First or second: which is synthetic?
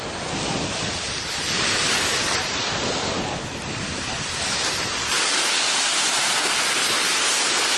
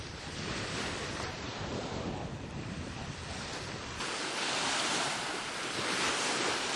second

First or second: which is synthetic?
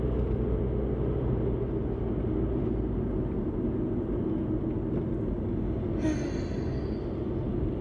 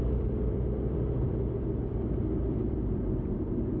second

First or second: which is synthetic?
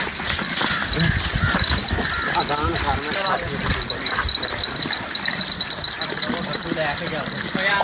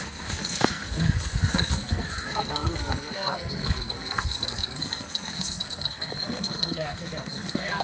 second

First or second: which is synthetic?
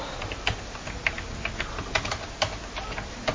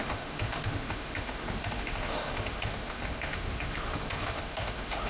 second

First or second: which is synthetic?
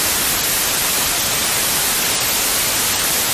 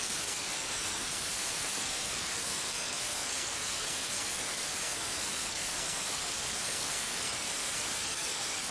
second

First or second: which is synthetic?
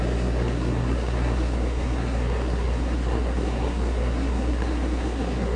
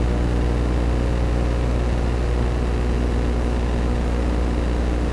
first